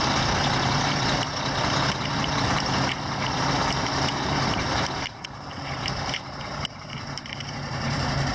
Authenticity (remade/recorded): remade